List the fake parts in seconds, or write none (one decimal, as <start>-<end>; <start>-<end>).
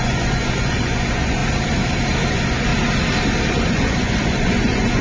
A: 0.0-1.4; 2.3-2.7; 3.7-5.0